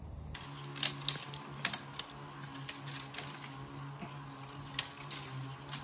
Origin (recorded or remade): recorded